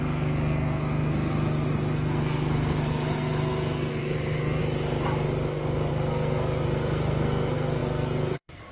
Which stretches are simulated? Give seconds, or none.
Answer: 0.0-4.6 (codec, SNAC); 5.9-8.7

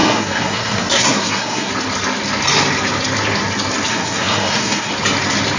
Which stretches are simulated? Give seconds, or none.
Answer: 0.0-1.7 (codec, SNAC); 3.9-4.9

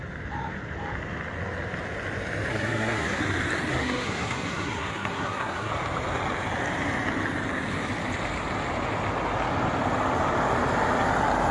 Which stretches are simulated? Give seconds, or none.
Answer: 2.5-3.2 (codec, SNAC); 3.7-5.7